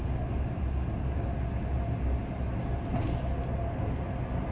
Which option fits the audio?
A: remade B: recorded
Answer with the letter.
B